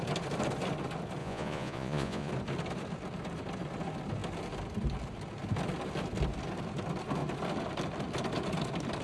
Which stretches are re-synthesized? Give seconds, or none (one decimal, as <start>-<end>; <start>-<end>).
1.2-2.3